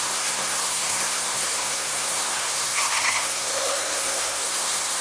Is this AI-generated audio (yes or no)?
yes